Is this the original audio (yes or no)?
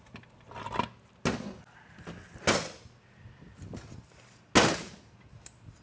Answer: yes